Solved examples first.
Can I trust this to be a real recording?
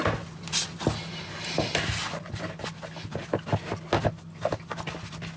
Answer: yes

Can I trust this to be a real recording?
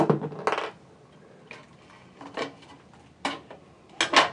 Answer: yes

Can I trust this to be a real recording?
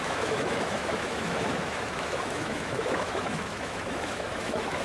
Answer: no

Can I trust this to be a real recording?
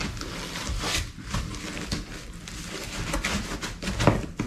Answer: yes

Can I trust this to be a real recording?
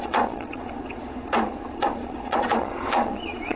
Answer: no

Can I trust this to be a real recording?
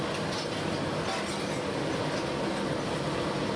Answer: yes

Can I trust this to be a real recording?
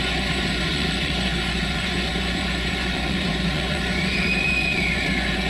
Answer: no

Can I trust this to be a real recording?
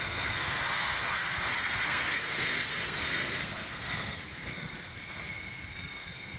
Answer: no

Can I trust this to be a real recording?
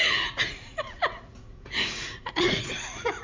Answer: no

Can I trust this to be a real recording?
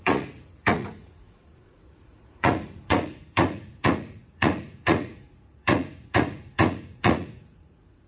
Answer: no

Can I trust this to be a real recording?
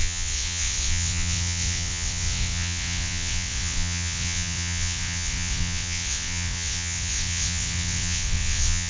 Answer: no